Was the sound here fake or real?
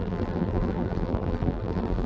fake